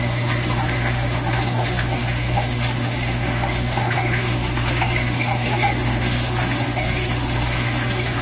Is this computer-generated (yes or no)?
yes